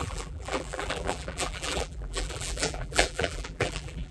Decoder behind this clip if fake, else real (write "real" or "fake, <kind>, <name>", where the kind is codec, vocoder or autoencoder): fake, vocoder, BigVGAN v2